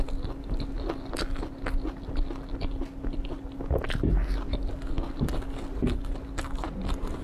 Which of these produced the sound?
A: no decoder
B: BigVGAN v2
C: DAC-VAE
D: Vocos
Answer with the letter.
A